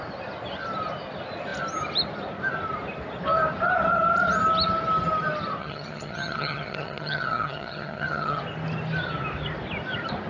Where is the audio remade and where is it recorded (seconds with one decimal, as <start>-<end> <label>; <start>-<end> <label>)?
0.0-5.6 recorded; 5.6-8.4 remade; 8.4-10.3 recorded